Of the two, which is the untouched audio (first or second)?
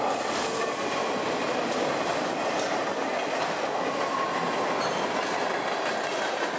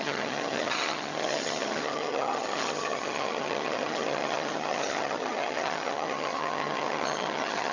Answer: first